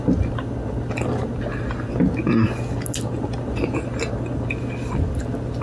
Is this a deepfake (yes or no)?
no